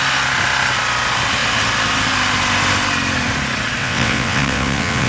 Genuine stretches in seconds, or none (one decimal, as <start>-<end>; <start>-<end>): 0.0-3.8